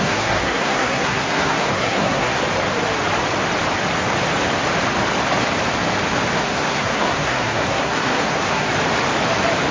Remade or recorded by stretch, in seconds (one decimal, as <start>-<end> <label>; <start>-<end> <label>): 0.0-2.4 remade; 2.4-6.4 recorded; 6.4-8.7 remade; 8.7-9.7 recorded